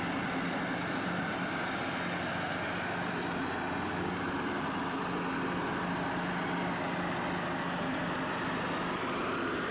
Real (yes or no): yes